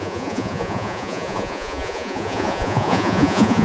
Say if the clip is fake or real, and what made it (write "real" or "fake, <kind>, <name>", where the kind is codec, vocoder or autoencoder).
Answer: fake, vocoder, Vocos